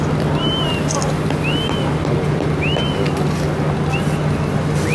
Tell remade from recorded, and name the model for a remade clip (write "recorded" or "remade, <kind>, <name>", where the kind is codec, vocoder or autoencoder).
recorded